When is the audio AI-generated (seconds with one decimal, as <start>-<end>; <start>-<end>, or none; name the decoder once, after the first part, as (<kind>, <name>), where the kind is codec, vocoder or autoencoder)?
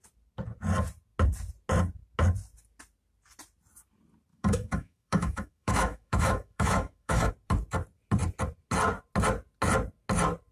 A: 4.3-7.3 (autoencoder, DAC-VAE)